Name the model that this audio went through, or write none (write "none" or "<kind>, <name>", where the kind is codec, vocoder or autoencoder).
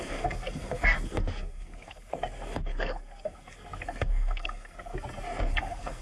codec, SNAC